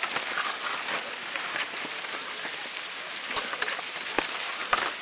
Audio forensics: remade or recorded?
recorded